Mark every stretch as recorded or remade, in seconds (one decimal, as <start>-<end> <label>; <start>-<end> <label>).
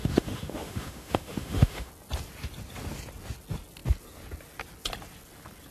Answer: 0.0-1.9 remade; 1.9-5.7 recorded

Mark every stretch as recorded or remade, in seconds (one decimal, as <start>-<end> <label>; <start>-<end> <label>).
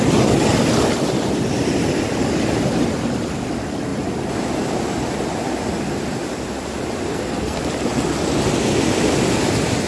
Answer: 0.0-7.1 recorded; 7.1-7.6 remade; 7.6-9.9 recorded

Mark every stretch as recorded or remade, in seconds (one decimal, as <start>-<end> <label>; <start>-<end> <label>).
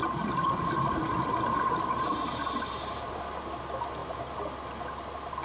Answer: 0.0-3.2 remade; 3.2-5.4 recorded